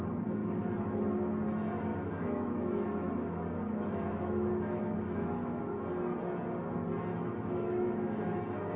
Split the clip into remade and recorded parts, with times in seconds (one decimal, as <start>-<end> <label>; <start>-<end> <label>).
0.0-0.4 recorded; 0.4-1.3 remade; 1.3-1.9 recorded; 1.9-5.8 remade; 5.8-7.1 recorded; 7.1-8.4 remade; 8.4-8.8 recorded